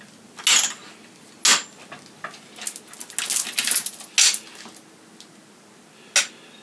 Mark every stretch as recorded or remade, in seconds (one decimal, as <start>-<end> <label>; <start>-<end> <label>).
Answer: 0.0-6.6 recorded